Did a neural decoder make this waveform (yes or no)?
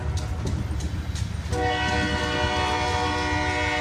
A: no